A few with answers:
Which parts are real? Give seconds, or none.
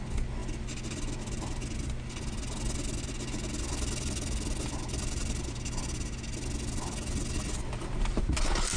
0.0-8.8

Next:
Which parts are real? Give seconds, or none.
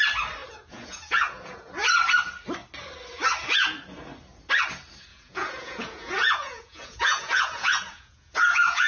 0.0-0.4; 1.7-5.1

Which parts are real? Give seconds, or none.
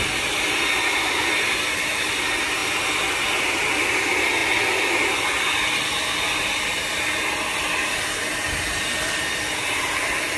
0.0-10.4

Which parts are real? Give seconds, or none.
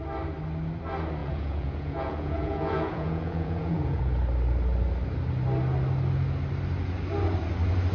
0.0-1.2; 4.0-7.9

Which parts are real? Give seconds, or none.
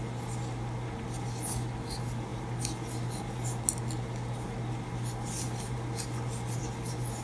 0.0-7.2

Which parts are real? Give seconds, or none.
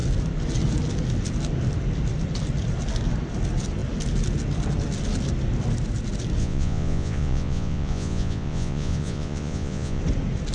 0.0-6.4; 10.0-10.5